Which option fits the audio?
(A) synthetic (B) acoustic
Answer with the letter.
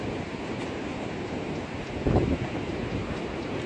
B